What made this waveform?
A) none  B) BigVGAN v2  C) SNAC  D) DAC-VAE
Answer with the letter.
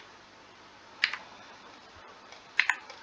B